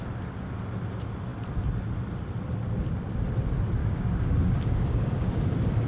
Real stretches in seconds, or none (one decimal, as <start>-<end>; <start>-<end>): 0.0-3.8; 5.4-5.9